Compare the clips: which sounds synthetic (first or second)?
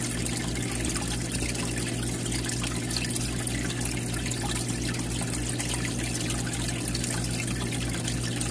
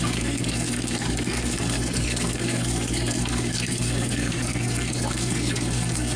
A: second